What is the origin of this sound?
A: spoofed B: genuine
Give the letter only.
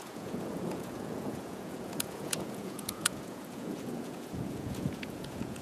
A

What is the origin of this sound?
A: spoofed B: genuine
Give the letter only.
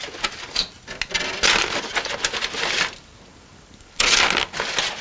B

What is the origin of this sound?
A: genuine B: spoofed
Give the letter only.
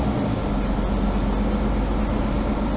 A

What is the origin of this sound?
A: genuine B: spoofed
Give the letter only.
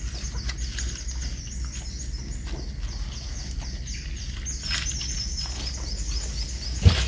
A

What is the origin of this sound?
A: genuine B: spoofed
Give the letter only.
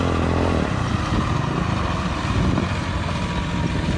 A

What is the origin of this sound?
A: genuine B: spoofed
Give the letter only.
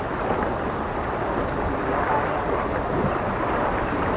A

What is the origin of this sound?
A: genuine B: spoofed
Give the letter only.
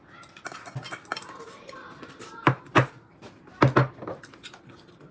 A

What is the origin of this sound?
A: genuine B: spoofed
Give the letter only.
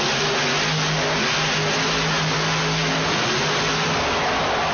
A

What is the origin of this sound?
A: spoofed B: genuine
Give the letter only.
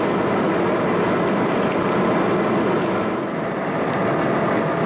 B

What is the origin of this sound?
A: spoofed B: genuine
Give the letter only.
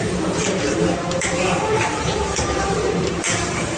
A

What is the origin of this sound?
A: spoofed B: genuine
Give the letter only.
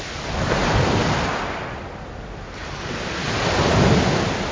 B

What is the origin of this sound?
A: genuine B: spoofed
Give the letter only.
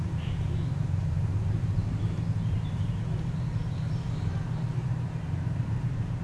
B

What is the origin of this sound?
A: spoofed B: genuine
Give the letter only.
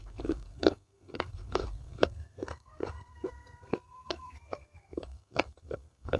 A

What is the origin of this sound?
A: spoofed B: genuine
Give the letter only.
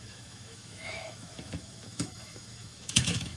A